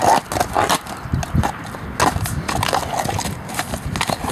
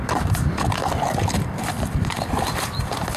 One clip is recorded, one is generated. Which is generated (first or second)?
second